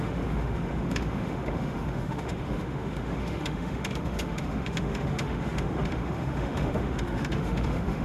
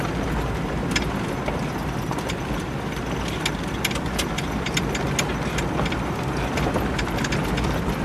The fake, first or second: first